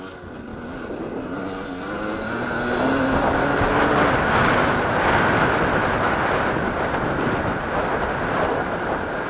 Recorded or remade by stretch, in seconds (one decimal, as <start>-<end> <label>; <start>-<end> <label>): 0.0-9.3 recorded